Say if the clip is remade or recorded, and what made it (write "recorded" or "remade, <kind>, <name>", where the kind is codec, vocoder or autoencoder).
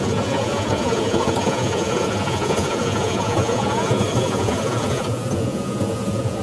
remade, vocoder, Vocos